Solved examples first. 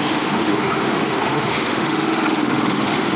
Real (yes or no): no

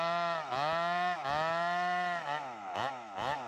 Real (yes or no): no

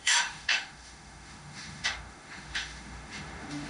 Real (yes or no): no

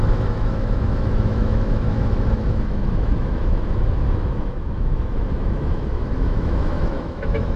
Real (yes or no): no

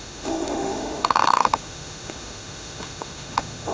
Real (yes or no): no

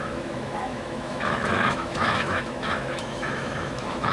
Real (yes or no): no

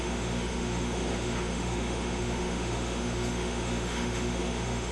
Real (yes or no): no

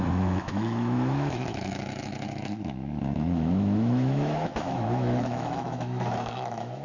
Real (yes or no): no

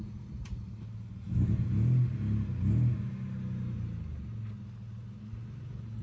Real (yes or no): yes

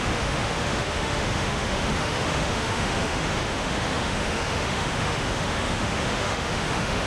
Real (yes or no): no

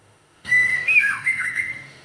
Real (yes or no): no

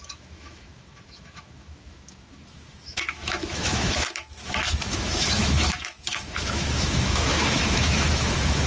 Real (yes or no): no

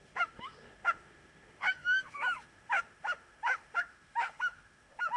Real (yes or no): no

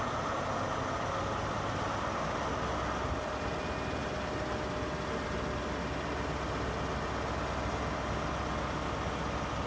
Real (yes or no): yes